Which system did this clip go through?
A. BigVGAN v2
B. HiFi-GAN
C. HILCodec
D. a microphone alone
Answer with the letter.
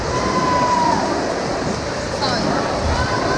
D